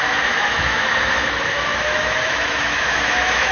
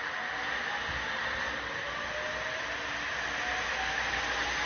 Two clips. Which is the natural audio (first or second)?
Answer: second